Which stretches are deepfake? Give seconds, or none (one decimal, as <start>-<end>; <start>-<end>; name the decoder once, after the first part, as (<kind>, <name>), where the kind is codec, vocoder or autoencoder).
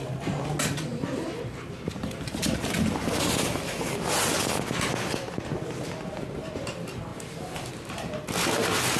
0.9-2.6 (vocoder, BigVGAN v2)